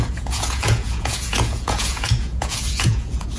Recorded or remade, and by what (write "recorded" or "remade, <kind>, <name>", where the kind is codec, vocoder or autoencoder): remade, vocoder, Vocos